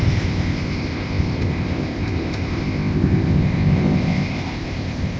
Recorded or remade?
remade